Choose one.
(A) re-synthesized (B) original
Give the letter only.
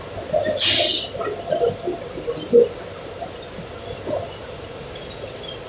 B